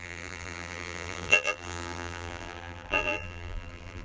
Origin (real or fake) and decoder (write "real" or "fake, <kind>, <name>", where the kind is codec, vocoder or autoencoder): fake, vocoder, BigVGAN v2